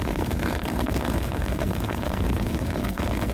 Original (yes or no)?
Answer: no